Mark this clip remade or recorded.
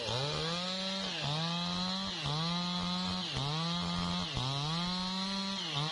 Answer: recorded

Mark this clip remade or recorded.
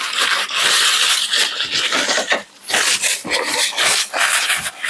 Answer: recorded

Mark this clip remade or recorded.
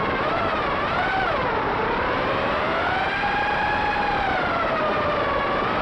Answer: remade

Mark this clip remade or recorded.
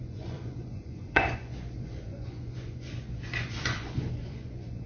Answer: remade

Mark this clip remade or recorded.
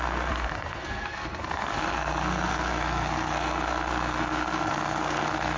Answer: remade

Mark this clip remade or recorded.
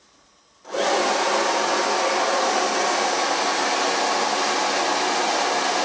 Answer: recorded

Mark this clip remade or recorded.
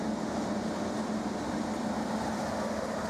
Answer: recorded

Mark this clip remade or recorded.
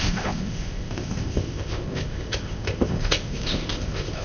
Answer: remade